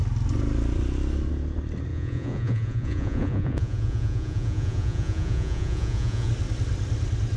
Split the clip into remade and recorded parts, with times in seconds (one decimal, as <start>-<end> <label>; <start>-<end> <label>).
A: 0.0-1.9 recorded; 1.9-6.3 remade; 6.3-7.4 recorded